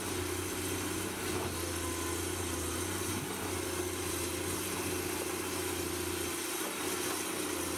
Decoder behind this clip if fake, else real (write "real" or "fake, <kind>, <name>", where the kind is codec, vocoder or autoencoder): real